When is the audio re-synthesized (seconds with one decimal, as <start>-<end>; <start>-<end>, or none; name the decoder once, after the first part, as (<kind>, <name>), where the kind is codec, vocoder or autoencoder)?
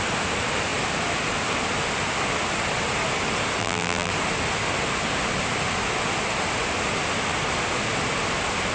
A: 3.6-4.1 (vocoder, BigVGAN v2)